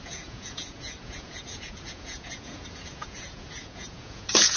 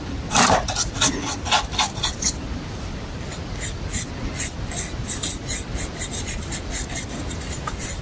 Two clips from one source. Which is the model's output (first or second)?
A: first